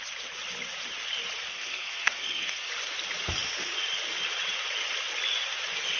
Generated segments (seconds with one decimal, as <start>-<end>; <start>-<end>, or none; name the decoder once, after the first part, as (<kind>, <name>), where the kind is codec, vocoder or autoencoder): 1.5-2.7 (codec, SNAC)